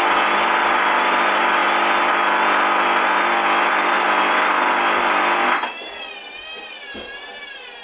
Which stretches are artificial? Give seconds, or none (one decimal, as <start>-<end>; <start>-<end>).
none